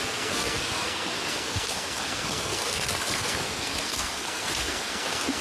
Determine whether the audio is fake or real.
fake